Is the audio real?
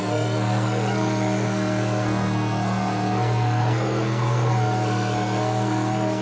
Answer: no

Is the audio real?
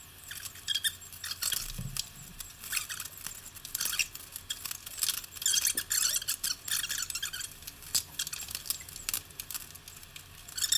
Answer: yes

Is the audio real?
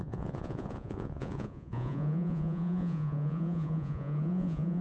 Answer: no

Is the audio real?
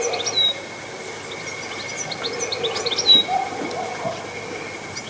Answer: yes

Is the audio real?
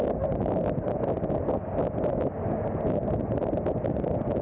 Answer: yes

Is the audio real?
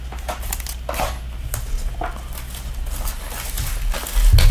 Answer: yes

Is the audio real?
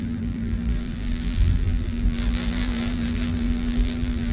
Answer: no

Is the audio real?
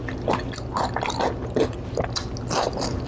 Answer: yes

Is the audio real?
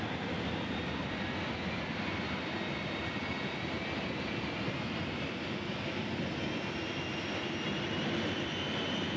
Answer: yes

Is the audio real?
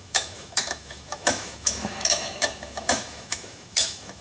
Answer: no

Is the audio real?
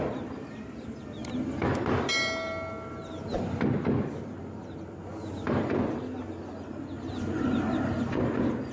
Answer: yes